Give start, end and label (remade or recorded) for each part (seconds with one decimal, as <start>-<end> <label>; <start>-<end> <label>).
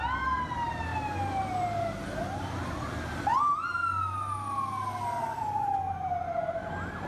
0.0-0.9 recorded; 0.9-1.5 remade; 1.5-7.1 recorded